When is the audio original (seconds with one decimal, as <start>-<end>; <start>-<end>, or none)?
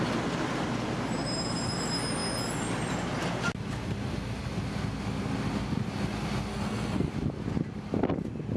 0.0-6.5; 7.1-8.6